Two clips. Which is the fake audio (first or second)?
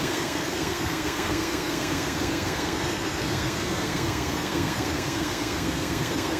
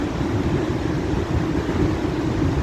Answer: first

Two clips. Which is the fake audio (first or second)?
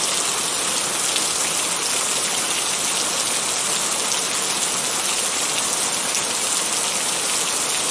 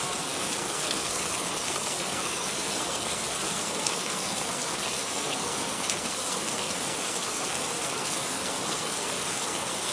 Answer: second